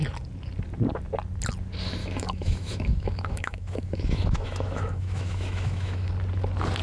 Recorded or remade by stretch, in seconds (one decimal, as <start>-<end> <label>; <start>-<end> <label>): 0.0-2.0 recorded; 2.0-6.1 remade; 6.1-6.8 recorded